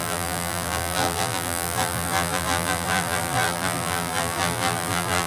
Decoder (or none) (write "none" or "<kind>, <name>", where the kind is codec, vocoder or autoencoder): vocoder, BigVGAN v2